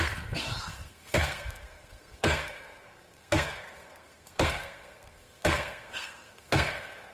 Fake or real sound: fake